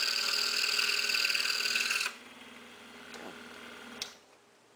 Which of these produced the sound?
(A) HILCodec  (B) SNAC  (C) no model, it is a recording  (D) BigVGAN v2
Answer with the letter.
C